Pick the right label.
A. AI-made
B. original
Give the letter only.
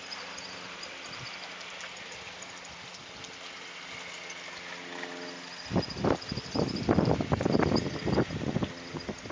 B